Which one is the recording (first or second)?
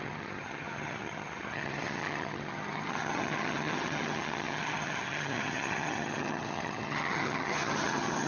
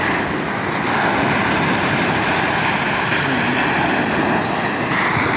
second